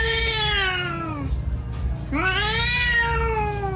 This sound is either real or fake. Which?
real